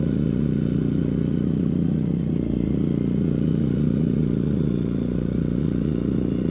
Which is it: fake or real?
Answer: fake